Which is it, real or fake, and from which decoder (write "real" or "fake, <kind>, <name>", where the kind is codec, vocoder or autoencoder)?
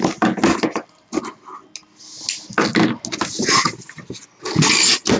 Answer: real